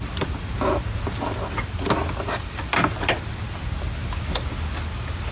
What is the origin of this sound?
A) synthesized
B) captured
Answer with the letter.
B